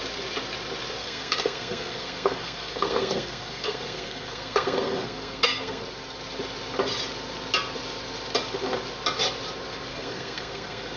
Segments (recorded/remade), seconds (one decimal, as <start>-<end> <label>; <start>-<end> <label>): 0.0-1.0 recorded; 1.0-5.8 remade; 5.8-9.9 recorded; 9.9-11.0 remade